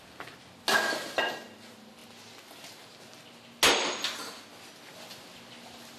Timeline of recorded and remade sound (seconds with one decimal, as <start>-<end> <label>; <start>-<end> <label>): 0.0-6.0 recorded